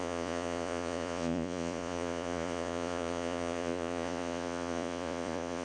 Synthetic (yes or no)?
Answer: yes